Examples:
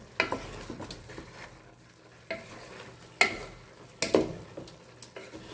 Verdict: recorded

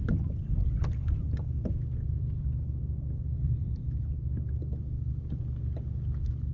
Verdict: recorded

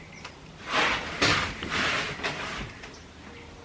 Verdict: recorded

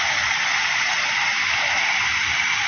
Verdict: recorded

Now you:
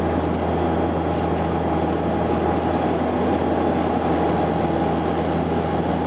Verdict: recorded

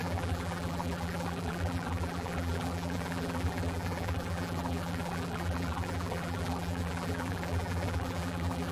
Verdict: remade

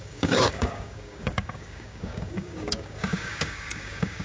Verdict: remade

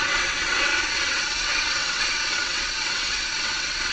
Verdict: remade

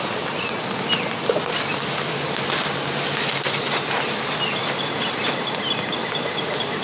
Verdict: recorded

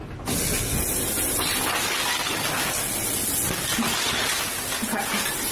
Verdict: recorded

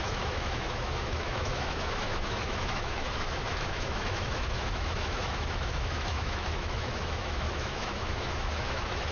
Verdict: remade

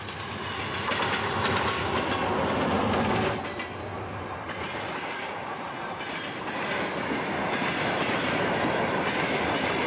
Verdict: recorded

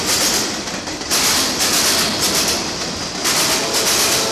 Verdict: recorded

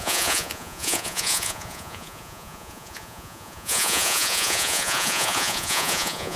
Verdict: remade